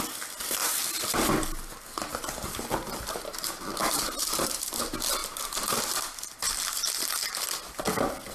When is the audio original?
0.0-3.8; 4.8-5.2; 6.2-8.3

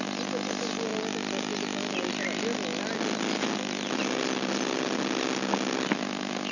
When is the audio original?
0.0-6.5

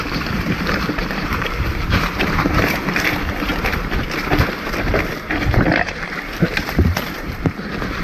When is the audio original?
3.5-6.4

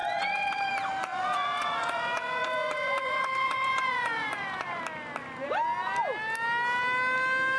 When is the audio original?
0.7-1.1; 4.8-7.6